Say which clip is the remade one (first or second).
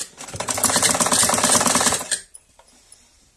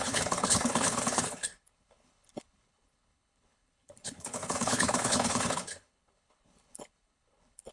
second